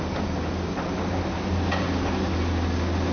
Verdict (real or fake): real